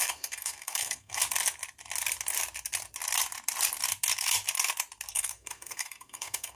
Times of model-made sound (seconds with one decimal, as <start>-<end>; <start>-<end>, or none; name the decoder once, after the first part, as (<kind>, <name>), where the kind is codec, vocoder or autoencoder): 0.0-1.2 (codec, SNAC); 5.1-6.5